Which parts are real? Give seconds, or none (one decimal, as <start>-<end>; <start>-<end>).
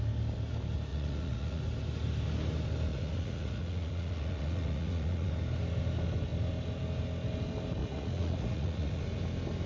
0.0-0.9; 1.6-2.9; 5.3-7.8; 9.0-9.7